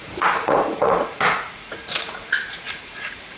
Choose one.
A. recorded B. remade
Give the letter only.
B